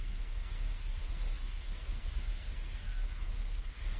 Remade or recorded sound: remade